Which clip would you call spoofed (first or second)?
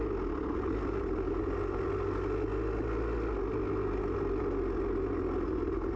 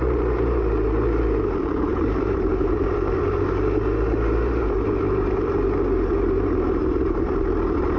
second